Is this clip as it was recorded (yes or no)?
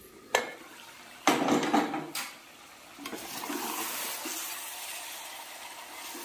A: yes